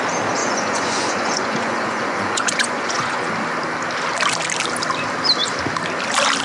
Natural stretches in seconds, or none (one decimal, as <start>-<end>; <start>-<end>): 0.0-0.4; 3.3-6.4